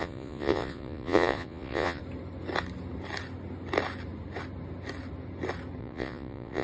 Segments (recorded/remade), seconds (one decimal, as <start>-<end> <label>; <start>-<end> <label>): 0.0-2.0 remade; 2.0-5.8 recorded; 5.8-6.6 remade